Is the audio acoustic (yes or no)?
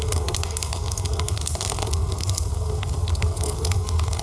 no